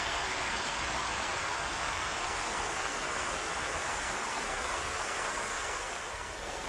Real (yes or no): no